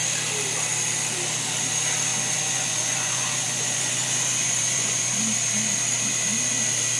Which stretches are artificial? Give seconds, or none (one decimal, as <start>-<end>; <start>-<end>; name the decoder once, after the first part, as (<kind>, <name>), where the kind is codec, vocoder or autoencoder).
2.1-5.2 (vocoder, Vocos)